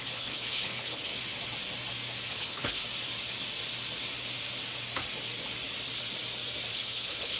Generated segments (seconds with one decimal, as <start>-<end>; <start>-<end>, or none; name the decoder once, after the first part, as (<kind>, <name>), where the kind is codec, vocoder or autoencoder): 0.0-1.1 (codec, HILCodec); 2.3-2.8; 6.7-7.4